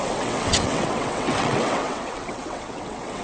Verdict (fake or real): fake